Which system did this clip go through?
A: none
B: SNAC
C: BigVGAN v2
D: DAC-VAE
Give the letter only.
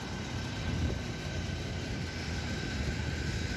A